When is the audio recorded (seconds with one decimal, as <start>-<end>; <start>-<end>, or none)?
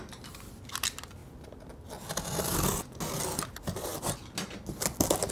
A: 0.0-5.3